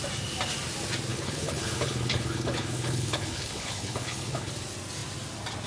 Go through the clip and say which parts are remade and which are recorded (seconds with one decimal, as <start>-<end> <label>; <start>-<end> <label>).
0.0-1.1 recorded; 1.1-4.5 remade; 4.5-5.7 recorded